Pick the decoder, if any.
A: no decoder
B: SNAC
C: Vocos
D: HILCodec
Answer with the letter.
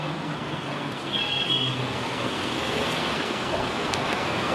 B